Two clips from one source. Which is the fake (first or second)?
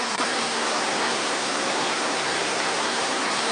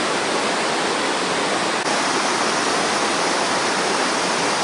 first